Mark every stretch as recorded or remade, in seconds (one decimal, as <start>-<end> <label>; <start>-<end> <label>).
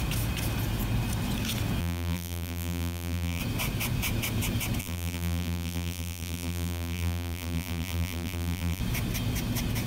0.0-1.8 recorded; 1.8-3.4 remade; 3.4-4.8 recorded; 4.8-8.8 remade; 8.8-9.9 recorded